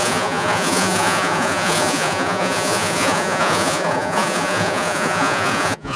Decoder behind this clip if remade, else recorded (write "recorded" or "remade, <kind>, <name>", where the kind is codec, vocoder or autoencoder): remade, vocoder, Vocos